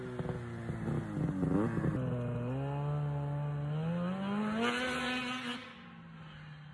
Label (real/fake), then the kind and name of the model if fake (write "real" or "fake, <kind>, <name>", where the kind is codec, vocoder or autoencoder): real